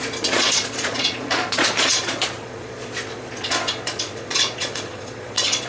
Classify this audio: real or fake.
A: fake